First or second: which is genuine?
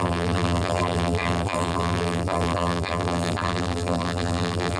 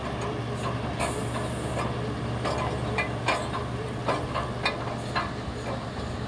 second